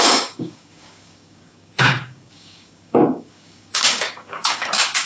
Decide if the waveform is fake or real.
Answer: fake